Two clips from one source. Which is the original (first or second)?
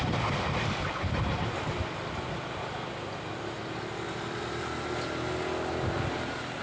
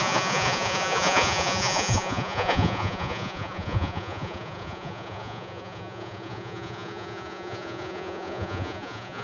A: first